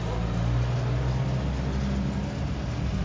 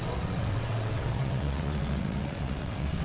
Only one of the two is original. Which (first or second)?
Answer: first